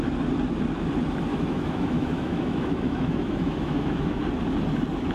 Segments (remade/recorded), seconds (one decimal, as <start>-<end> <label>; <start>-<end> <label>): 0.0-1.3 recorded; 1.3-4.2 remade; 4.2-5.1 recorded